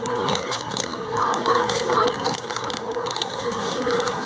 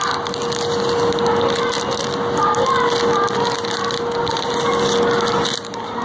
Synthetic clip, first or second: first